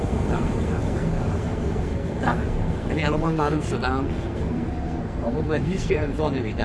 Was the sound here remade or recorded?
remade